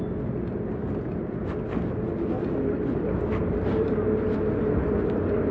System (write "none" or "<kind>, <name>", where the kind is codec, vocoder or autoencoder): none